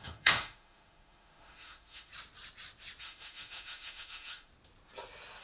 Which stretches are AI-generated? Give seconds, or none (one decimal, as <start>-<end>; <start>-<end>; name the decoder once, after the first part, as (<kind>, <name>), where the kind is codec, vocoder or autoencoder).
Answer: 0.0-2.1 (autoencoder, DAC-VAE); 3.0-4.5